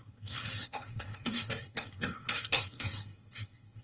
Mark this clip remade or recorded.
remade